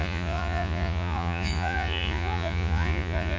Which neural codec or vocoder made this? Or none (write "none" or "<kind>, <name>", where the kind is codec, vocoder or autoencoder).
vocoder, Vocos